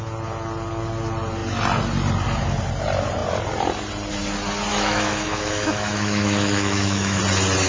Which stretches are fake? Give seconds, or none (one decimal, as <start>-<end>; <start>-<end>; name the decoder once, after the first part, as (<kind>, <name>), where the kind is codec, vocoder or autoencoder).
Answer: 4.7-7.2 (autoencoder, DAC-VAE)